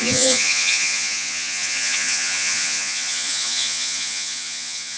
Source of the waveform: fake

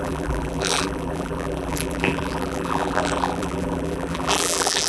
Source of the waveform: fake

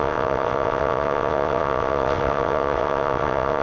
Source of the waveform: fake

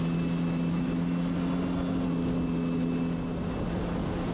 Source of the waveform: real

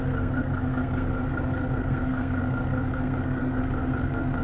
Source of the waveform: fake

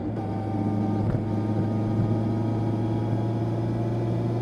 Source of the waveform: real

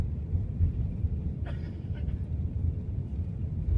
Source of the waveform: fake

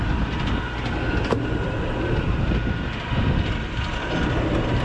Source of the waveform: real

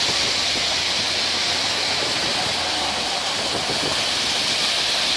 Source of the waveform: real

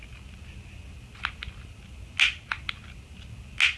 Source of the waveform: real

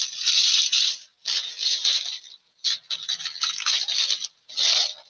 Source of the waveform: real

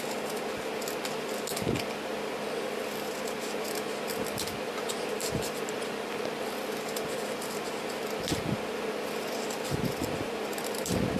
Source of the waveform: real